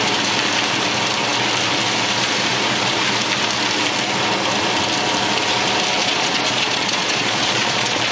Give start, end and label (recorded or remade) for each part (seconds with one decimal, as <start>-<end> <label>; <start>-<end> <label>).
0.0-6.0 recorded; 6.0-8.1 remade